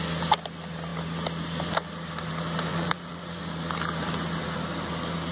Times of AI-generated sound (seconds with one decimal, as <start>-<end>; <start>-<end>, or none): 2.7-3.4